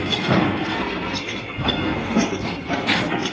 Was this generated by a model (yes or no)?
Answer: yes